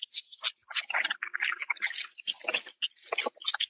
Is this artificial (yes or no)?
no